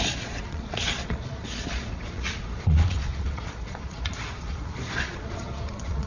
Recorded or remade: remade